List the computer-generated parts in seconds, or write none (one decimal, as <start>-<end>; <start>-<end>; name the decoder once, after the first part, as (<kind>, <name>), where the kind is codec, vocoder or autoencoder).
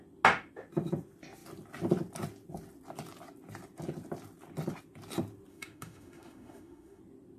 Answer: 5.5-7.0 (autoencoder, DAC-VAE)